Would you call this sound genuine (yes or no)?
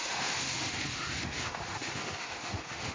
no